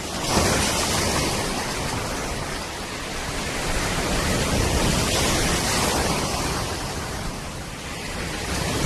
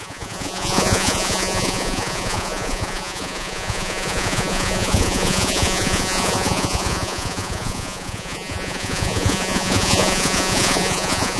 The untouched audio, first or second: first